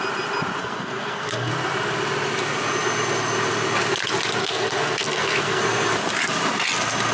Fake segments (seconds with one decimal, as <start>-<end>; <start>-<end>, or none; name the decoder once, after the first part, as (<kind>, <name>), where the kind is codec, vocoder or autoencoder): 0.6-1.5 (codec, SNAC); 4.4-5.6